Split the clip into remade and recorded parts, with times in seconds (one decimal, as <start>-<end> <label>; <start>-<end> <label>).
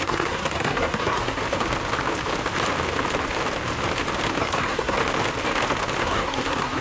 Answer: 0.0-1.4 remade; 1.4-4.4 recorded; 4.4-5.0 remade; 5.0-6.0 recorded; 6.0-6.8 remade